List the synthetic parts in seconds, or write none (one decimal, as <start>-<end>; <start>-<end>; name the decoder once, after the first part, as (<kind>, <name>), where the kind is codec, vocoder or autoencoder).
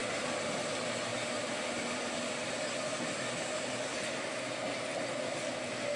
0.0-0.7 (vocoder, BigVGAN v2)